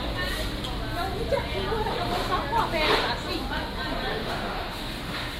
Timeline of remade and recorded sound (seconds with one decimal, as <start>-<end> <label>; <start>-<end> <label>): 0.0-4.1 recorded; 4.1-5.4 remade